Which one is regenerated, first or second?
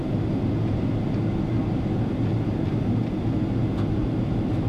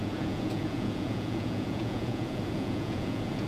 second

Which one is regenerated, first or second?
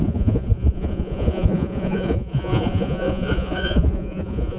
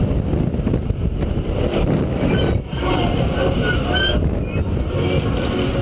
first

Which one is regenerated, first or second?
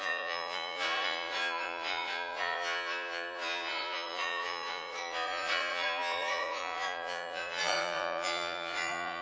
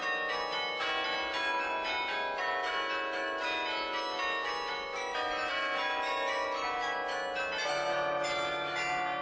first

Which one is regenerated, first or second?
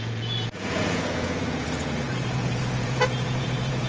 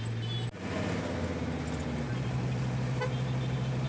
first